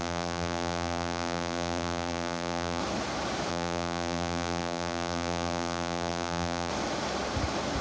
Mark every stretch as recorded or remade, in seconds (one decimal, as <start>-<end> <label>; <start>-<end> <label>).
0.0-2.8 remade; 2.8-3.5 recorded; 3.5-6.7 remade; 6.7-7.8 recorded